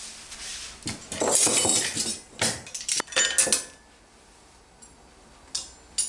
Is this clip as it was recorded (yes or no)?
yes